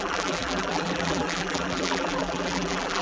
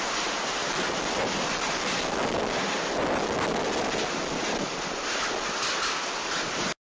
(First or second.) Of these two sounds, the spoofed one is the first